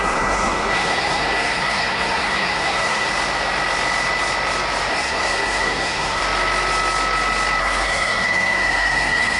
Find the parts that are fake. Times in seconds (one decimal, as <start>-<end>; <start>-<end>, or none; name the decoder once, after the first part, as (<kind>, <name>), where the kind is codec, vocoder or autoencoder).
0.0-3.1 (codec, SNAC); 4.9-6.2; 7.6-9.4